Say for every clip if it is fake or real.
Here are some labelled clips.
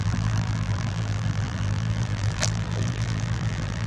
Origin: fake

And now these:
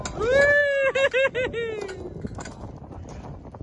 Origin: real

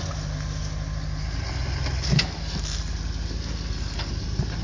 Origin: real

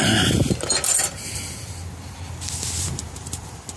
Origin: real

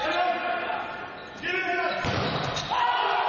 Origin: real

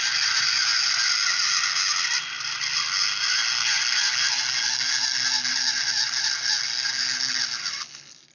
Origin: real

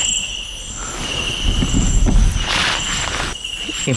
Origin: real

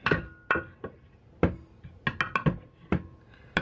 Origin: real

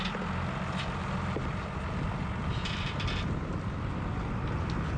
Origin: real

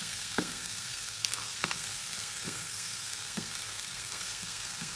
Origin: fake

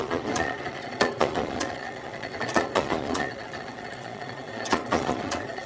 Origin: fake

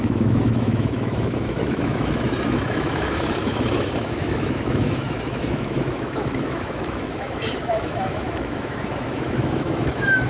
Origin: fake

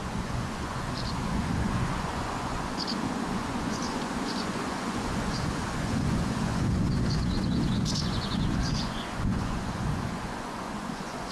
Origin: fake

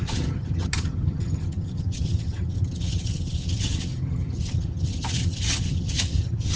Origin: fake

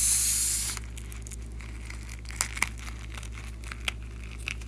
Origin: real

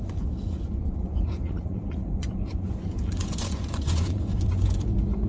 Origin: fake